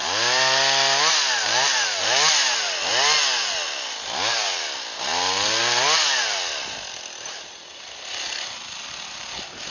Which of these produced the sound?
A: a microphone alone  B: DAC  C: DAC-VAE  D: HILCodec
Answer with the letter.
A